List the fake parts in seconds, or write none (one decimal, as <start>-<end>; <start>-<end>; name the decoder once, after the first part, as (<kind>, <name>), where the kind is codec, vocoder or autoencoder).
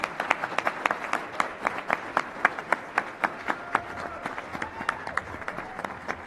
none